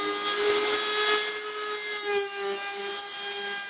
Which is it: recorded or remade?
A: recorded